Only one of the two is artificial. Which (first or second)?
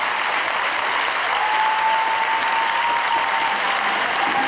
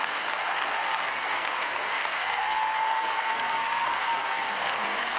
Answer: second